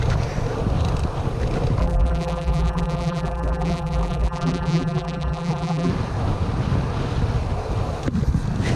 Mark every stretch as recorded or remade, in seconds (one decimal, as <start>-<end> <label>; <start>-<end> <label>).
0.0-1.8 recorded; 1.8-5.9 remade; 5.9-8.8 recorded